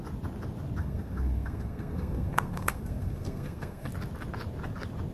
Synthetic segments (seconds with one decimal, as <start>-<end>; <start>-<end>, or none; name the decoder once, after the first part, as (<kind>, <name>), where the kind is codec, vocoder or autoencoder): 0.8-3.9 (codec, SNAC)

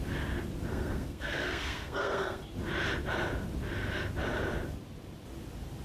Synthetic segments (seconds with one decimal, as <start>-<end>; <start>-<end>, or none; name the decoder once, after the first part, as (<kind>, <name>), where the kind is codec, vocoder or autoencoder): 0.7-2.4 (codec, SNAC)

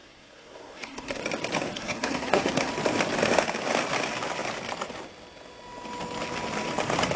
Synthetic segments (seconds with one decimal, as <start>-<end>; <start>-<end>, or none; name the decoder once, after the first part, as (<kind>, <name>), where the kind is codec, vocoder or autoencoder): 0.0-1.2 (codec, SNAC); 1.7-2.7

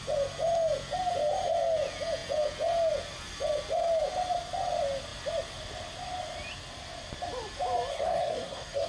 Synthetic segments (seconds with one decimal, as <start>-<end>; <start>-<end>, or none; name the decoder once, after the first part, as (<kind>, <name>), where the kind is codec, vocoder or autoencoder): 7.9-8.9 (codec, SNAC)

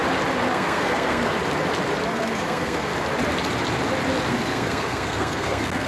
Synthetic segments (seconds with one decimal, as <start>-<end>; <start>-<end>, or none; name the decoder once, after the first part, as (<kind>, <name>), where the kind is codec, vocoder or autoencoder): 0.5-1.4 (codec, SNAC); 2.1-2.9; 4.3-5.9

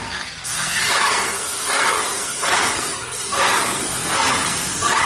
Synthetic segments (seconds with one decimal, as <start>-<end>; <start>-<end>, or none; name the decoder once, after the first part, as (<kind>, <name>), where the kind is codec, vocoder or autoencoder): 0.0-5.0 (codec, SNAC)

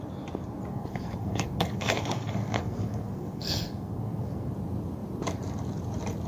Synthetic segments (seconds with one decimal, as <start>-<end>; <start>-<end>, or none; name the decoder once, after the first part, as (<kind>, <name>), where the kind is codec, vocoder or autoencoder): 0.7-4.5 (codec, SNAC)

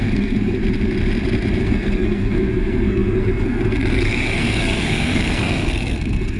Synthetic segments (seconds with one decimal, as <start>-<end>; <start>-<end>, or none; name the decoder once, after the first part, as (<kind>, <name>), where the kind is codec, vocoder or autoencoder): 0.0-0.6 (codec, SNAC); 1.6-6.4